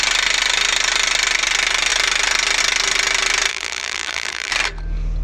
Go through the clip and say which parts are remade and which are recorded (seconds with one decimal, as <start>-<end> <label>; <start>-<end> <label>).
0.0-3.5 recorded; 3.5-4.5 remade; 4.5-5.2 recorded